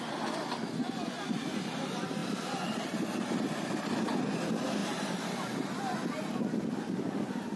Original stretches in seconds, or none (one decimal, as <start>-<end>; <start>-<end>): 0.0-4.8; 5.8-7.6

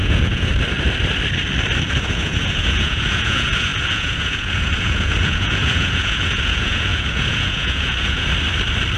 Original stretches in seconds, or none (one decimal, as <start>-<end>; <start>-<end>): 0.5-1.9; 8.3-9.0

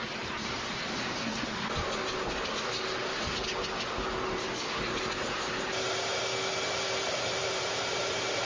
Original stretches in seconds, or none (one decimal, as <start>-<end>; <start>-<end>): 1.3-5.5; 6.1-7.0